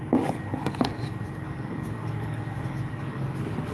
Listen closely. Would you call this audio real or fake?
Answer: fake